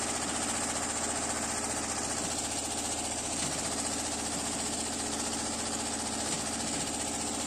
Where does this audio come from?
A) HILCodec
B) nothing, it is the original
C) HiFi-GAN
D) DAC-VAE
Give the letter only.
B